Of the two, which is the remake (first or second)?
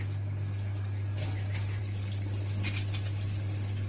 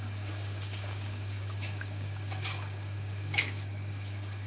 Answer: second